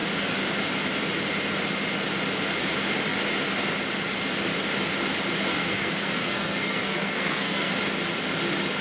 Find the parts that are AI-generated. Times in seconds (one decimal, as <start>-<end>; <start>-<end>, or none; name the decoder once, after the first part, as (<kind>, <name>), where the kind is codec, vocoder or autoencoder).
5.5-7.7 (codec, SNAC)